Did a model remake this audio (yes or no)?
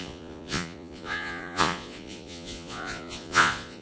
yes